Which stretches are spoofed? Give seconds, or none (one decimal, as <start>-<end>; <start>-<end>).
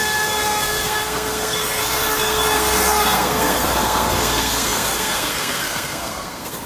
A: 0.0-6.7